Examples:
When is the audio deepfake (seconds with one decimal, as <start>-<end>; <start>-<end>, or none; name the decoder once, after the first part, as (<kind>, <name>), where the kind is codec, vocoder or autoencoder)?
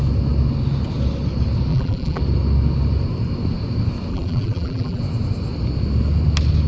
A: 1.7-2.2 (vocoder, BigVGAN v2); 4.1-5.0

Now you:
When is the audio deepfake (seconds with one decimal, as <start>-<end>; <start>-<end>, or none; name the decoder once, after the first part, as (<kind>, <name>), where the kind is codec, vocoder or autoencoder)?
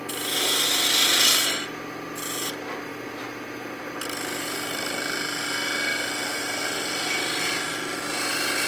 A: none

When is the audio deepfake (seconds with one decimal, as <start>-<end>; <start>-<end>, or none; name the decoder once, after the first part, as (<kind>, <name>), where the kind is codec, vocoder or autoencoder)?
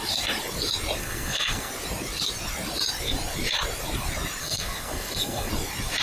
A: 1.0-1.7 (codec, SNAC); 4.4-5.5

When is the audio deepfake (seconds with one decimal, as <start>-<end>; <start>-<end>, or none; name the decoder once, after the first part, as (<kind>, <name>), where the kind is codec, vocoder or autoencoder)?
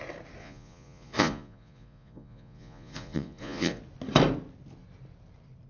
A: 0.4-3.8 (vocoder, Vocos)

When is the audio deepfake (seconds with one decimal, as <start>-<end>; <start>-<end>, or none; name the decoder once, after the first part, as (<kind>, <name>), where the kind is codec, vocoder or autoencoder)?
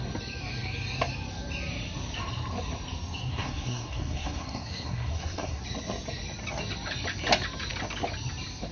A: 3.3-5.6 (codec, SNAC)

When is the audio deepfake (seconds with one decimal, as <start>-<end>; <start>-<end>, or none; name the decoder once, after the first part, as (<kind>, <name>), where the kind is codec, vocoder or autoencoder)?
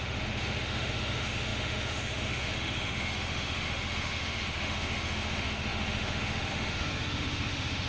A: 0.0-7.9 (autoencoder, DAC-VAE)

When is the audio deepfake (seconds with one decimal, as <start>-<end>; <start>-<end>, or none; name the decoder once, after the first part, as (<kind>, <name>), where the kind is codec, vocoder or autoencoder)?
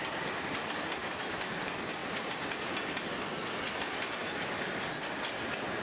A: 1.0-1.5 (autoencoder, DAC-VAE); 4.2-4.7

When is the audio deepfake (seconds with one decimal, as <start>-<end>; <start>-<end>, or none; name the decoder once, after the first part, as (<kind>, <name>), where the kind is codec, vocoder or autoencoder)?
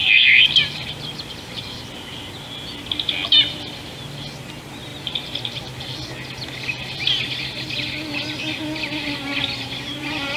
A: 0.0-1.7 (vocoder, BigVGAN v2); 4.9-5.6